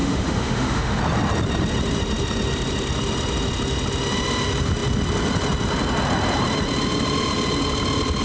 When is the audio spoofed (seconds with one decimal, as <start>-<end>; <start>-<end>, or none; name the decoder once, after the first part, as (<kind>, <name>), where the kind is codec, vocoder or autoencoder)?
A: 0.0-1.0 (autoencoder, DAC-VAE)